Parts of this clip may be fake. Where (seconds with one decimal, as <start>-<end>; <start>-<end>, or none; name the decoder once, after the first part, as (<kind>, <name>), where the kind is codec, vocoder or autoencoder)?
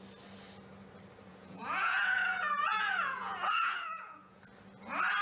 1.3-4.4 (vocoder, Vocos)